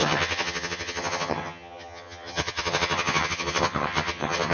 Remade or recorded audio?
remade